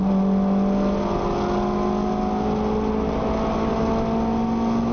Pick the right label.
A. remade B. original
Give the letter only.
B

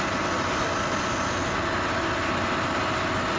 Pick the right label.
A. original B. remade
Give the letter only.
A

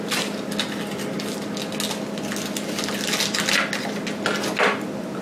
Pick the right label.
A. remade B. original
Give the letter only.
B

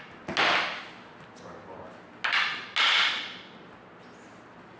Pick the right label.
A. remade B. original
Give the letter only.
B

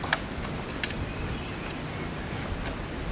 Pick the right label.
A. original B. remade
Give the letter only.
A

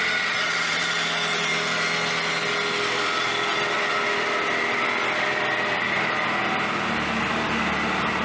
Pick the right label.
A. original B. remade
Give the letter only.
A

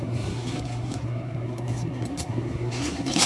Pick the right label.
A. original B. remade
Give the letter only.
B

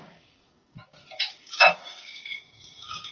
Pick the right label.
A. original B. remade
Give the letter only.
B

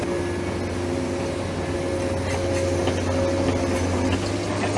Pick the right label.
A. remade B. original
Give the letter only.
B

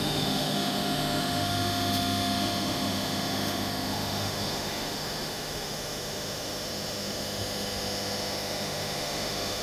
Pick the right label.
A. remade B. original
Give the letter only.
A